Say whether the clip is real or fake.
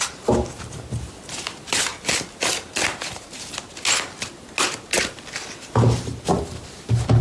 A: real